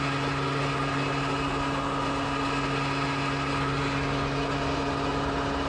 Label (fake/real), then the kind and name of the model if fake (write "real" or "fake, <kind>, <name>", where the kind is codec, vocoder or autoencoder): real